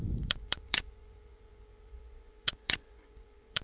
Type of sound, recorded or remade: remade